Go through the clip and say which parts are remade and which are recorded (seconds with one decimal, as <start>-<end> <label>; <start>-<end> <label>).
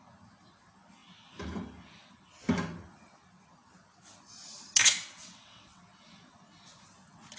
0.0-4.8 recorded; 4.8-5.8 remade; 5.8-7.4 recorded